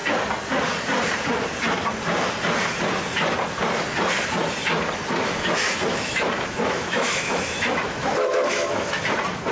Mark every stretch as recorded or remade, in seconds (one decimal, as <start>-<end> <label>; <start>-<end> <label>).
0.0-5.9 recorded; 5.9-9.0 remade; 9.0-9.5 recorded